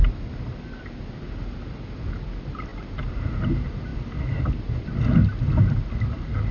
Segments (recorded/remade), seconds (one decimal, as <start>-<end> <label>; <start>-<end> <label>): 0.0-6.5 recorded